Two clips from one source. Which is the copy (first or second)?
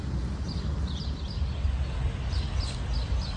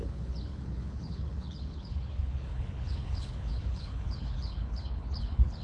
second